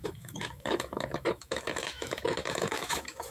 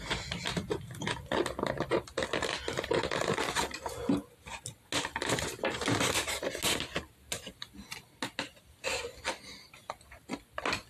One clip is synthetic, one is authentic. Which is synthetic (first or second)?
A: first